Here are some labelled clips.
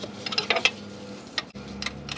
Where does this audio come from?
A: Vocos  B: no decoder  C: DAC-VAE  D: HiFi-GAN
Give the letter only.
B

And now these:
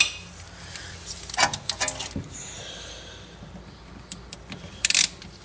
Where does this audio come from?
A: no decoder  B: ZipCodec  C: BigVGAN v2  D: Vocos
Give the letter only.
C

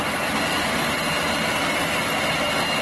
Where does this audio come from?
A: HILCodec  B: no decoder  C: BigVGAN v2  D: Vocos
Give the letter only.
B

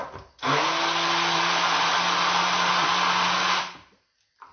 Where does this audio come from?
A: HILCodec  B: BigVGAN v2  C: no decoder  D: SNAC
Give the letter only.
C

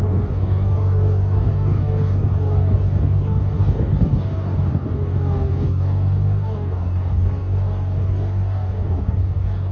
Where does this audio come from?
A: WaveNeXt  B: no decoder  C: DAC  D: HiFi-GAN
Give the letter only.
C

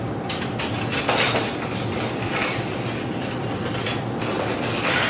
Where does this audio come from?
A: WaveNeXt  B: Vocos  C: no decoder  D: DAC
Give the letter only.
C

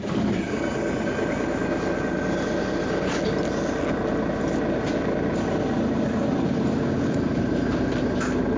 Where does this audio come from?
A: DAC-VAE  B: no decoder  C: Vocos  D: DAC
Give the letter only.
B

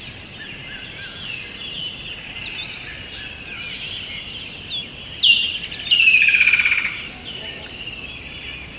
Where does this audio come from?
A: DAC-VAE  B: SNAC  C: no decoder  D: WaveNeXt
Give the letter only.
C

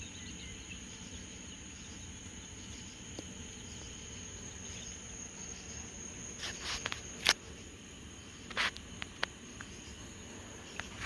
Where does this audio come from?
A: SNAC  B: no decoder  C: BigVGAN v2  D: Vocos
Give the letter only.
B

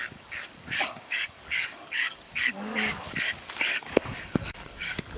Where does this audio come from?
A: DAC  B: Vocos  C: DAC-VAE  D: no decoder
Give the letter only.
A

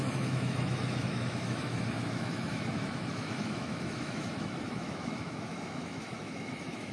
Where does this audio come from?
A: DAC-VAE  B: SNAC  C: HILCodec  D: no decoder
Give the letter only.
A